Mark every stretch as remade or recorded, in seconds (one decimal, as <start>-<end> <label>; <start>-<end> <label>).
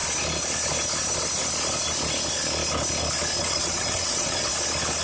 0.0-3.4 recorded; 3.4-4.5 remade; 4.5-5.0 recorded